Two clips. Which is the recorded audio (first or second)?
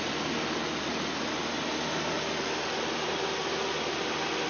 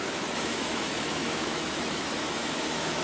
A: first